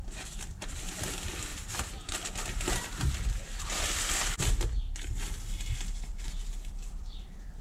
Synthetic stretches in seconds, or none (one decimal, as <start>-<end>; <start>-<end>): 0.0-1.5; 6.1-7.6